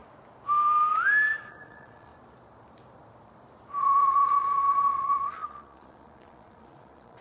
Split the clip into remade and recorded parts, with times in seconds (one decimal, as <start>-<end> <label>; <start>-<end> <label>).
0.0-1.5 recorded; 1.5-2.1 remade; 2.1-3.8 recorded; 3.8-7.2 remade

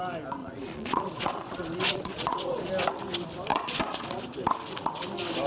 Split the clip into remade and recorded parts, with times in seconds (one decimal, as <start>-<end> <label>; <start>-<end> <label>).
0.0-0.4 recorded; 0.4-2.7 remade; 2.7-3.5 recorded; 3.5-4.2 remade; 4.2-5.5 recorded